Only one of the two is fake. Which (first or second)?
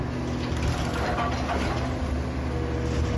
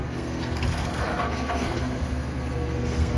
second